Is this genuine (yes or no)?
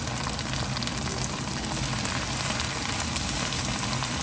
yes